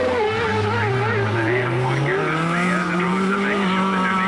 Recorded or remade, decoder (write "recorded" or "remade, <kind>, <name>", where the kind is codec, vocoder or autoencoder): recorded